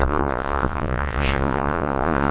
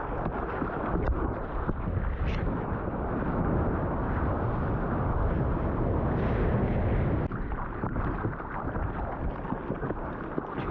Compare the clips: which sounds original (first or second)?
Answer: second